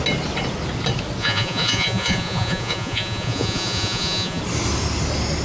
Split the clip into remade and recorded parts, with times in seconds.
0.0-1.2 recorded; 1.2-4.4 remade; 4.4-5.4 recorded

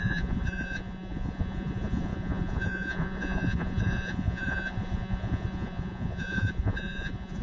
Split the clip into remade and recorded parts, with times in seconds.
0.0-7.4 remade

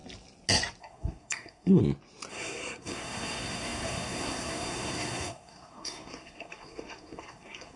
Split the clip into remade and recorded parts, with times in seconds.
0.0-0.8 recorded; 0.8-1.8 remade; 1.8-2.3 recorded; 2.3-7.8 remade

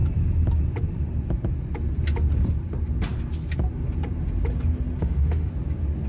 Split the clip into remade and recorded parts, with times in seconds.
0.0-5.0 recorded; 5.0-5.5 remade; 5.5-6.1 recorded

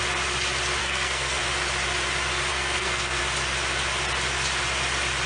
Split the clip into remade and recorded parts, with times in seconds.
0.0-0.8 recorded; 0.8-1.4 remade; 1.4-2.5 recorded; 2.5-3.2 remade; 3.2-5.3 recorded

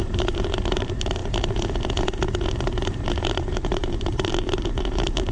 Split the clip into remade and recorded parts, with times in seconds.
0.0-1.2 remade; 1.2-2.5 recorded; 2.5-5.3 remade